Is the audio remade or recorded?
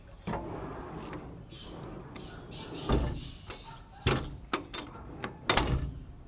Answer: recorded